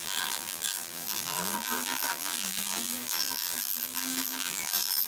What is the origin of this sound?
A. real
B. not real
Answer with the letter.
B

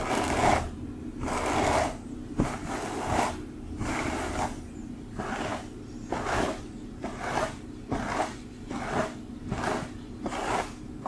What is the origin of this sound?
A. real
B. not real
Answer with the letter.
A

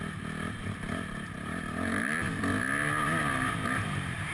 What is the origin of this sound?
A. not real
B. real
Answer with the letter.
B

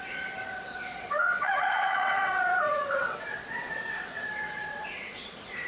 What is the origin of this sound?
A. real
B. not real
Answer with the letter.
B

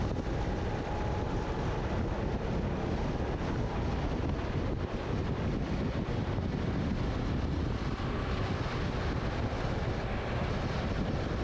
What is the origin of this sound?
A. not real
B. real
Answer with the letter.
B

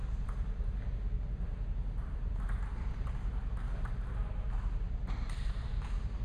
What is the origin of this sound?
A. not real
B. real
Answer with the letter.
A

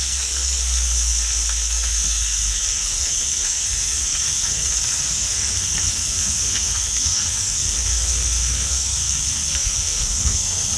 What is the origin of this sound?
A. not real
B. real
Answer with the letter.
A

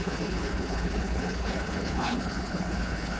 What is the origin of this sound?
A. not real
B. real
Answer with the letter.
A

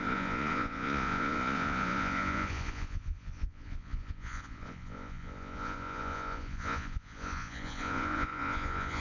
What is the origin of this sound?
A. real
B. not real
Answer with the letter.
B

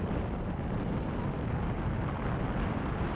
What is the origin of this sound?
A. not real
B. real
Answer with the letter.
B